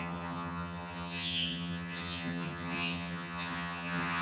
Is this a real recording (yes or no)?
no